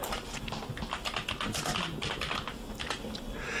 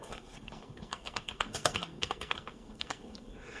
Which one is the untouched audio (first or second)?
first